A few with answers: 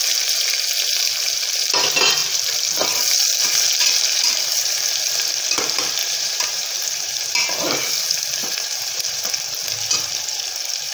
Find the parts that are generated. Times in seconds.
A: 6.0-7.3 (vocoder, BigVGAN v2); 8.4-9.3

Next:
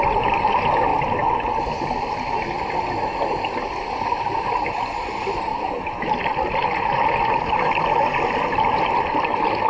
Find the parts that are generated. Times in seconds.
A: 5.5-6.0 (vocoder, BigVGAN v2)

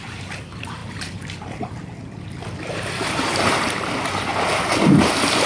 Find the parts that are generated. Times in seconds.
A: none

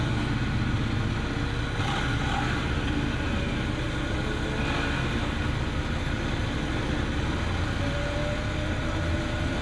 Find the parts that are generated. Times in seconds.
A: none

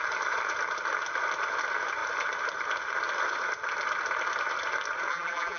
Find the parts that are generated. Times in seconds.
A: 5.1-5.6 (vocoder, BigVGAN v2)

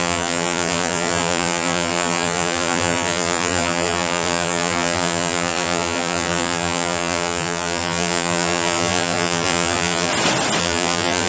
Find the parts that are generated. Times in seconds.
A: 0.0-10.1 (vocoder, BigVGAN v2); 10.6-11.3